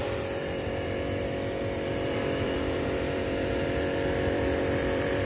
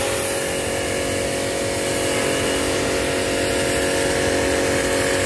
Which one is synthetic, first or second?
first